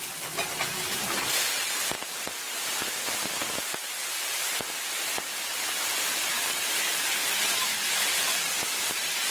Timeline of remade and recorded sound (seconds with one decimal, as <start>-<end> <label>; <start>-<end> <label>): 0.0-4.0 recorded; 4.0-4.9 remade; 4.9-9.3 recorded